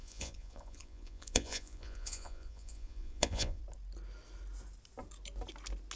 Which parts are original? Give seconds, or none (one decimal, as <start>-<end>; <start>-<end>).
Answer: 3.6-6.0